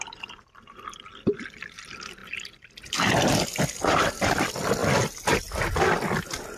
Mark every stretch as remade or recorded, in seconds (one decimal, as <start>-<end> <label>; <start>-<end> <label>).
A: 0.0-6.6 recorded

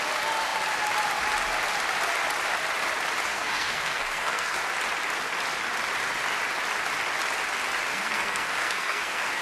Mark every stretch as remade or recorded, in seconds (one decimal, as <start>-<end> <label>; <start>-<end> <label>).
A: 0.0-3.3 recorded; 3.3-4.6 remade; 4.6-7.9 recorded; 7.9-9.4 remade

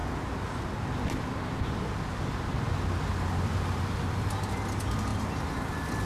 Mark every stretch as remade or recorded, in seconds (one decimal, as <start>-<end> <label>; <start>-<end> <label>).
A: 0.0-6.1 recorded

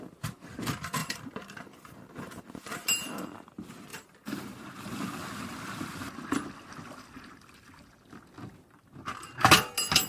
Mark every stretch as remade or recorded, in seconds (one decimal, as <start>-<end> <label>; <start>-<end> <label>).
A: 0.0-1.0 recorded; 1.0-3.2 remade; 3.2-3.9 recorded; 3.9-4.7 remade; 4.7-10.1 recorded

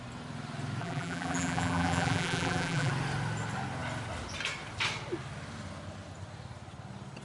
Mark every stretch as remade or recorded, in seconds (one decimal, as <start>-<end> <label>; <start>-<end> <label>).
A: 0.0-0.8 recorded; 0.8-2.9 remade; 2.9-7.2 recorded

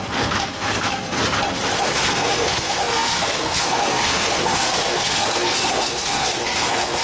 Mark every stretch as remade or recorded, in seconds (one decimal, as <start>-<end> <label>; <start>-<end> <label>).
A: 0.0-1.2 remade; 1.2-1.8 recorded; 1.8-7.0 remade

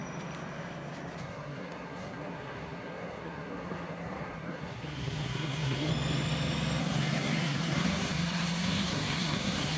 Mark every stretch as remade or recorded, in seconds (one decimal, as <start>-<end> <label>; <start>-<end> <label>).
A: 0.0-1.2 recorded; 1.2-5.9 remade; 5.9-6.8 recorded; 6.8-9.8 remade

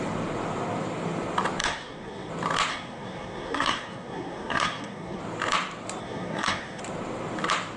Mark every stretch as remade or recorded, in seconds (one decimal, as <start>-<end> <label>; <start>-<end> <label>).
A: 0.0-1.6 recorded; 1.6-2.3 remade; 2.3-2.7 recorded; 2.7-5.2 remade; 5.2-6.0 recorded; 6.0-6.8 remade; 6.8-7.8 recorded